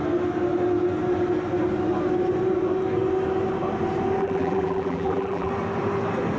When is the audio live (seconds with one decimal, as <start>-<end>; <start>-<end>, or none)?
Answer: 0.0-4.2; 5.5-6.4